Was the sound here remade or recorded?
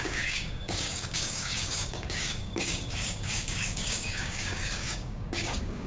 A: remade